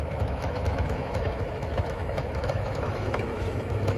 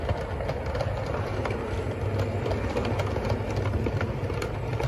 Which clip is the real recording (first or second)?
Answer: second